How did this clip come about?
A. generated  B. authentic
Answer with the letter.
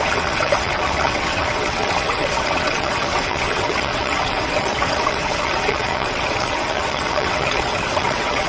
A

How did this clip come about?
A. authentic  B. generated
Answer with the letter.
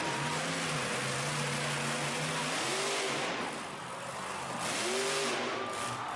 A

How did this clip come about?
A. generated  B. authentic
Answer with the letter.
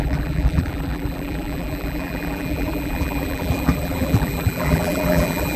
A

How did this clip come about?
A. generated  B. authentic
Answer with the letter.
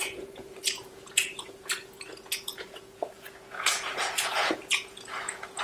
A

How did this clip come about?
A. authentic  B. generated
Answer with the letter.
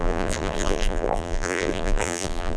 B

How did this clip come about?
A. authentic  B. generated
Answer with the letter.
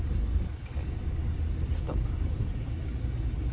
A